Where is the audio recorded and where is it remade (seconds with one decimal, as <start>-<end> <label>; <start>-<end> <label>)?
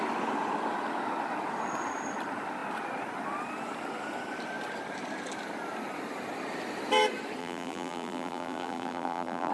0.0-7.4 recorded; 7.4-9.5 remade